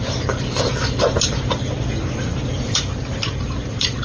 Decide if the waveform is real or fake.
fake